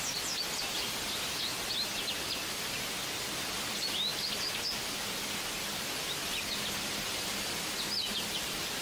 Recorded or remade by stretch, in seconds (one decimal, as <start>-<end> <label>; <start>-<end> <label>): 0.0-1.5 remade; 1.5-2.1 recorded; 2.1-4.1 remade; 4.1-7.8 recorded; 7.8-8.8 remade